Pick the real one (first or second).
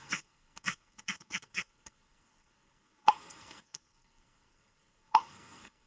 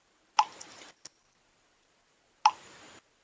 second